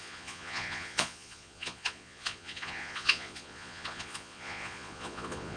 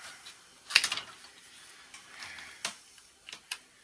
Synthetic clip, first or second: first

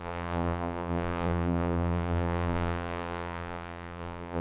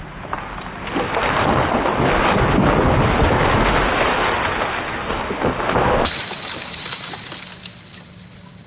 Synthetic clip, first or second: first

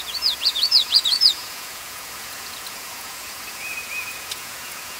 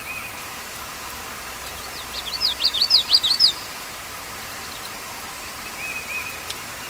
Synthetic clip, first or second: first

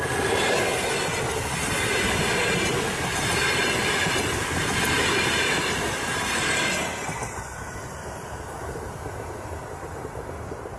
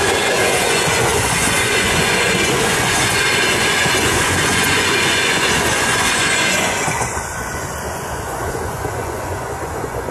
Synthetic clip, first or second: second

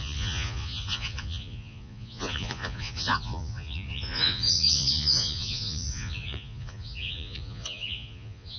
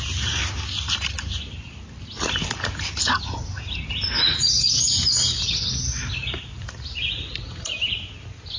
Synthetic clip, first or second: first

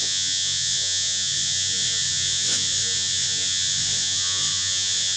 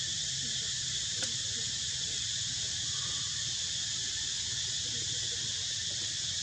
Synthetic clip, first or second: first